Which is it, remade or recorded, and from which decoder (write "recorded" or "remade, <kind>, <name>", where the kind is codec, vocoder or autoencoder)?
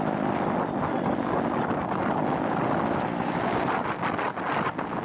recorded